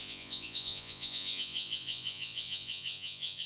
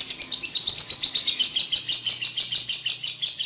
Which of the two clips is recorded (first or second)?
second